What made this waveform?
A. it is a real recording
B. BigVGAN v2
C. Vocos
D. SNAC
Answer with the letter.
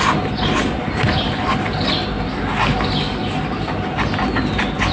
A